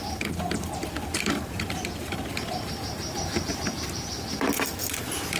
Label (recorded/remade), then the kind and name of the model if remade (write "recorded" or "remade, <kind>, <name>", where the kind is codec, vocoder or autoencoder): remade, vocoder, BigVGAN v2